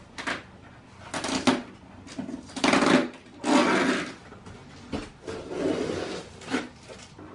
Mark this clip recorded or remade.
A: recorded